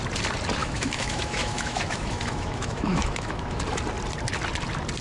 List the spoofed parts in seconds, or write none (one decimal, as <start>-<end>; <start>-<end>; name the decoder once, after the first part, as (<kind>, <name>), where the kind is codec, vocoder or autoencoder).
0.6-3.6 (autoencoder, DAC-VAE)